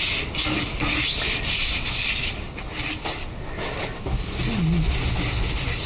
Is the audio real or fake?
real